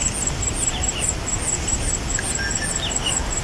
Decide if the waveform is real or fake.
real